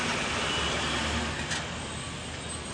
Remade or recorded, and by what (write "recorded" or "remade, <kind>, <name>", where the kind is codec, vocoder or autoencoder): recorded